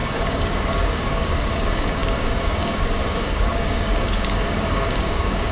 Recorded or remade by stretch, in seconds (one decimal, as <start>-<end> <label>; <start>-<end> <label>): 0.0-5.5 remade